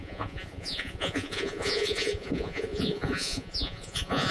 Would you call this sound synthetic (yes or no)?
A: yes